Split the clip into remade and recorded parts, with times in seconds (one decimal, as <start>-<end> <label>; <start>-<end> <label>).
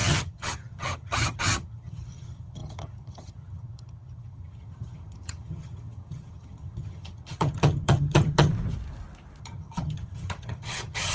0.0-8.5 remade; 8.5-9.4 recorded; 9.4-11.1 remade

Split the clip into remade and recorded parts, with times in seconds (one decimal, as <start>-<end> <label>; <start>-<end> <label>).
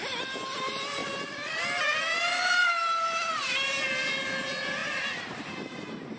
0.0-1.0 recorded; 1.0-2.7 remade; 2.7-3.4 recorded; 3.4-4.2 remade; 4.2-4.8 recorded; 4.8-5.4 remade; 5.4-6.2 recorded